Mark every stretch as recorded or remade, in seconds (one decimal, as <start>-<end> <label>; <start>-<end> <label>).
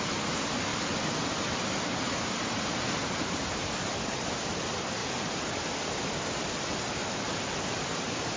0.0-5.0 recorded; 5.0-8.4 remade